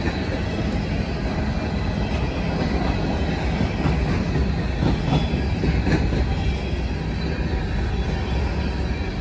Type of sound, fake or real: real